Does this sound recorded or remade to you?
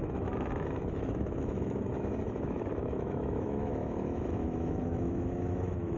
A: remade